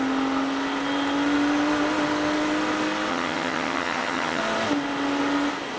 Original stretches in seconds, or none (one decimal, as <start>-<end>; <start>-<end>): 0.0-3.1; 4.4-5.8